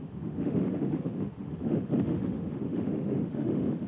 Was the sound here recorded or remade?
remade